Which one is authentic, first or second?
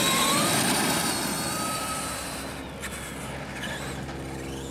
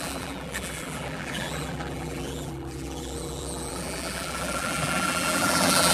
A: first